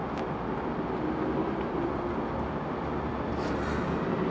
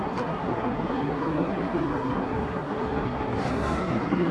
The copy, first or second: second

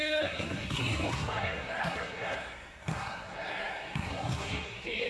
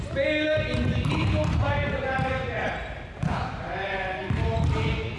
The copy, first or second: first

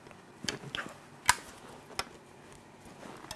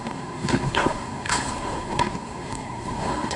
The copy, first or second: second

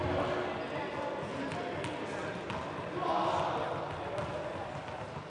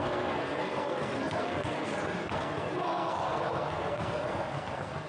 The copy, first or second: second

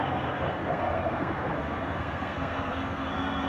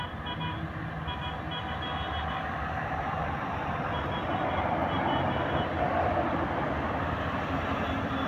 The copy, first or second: first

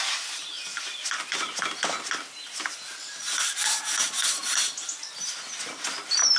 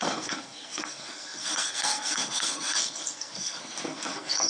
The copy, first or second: second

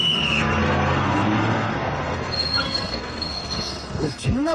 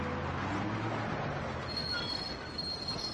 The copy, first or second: first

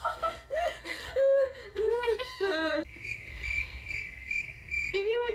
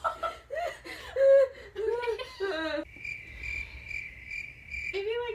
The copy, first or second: first